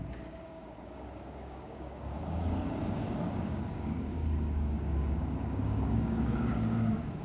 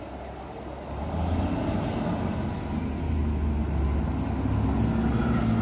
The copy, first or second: first